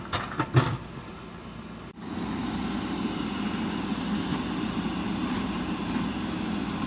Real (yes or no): yes